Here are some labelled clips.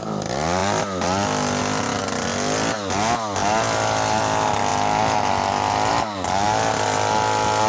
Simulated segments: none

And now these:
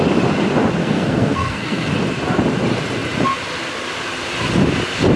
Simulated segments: 0.8-1.9 (codec, SNAC)

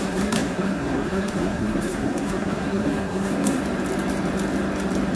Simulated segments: 0.0-3.6 (codec, SNAC)

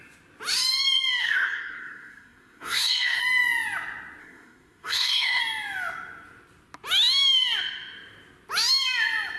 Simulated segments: 1.2-3.2 (codec, SNAC); 4.2-5.4

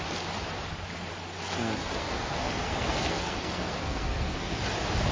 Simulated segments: 1.5-4.6 (codec, SNAC)